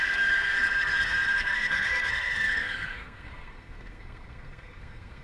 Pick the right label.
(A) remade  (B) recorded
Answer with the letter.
A